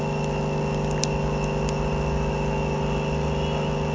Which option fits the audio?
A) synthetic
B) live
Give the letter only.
B